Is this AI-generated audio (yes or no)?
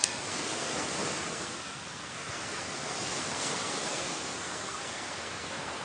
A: yes